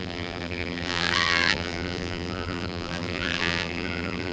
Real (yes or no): no